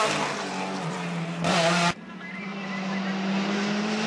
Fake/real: real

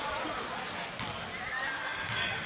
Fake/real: real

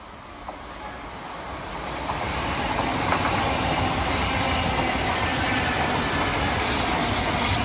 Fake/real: real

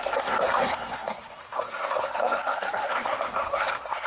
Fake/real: fake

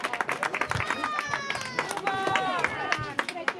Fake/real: real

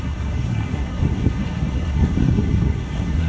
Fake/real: fake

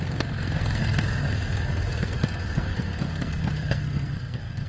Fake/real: fake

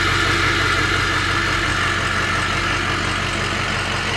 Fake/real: real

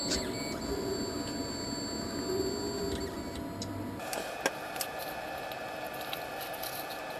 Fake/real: real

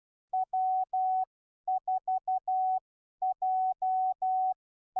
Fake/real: real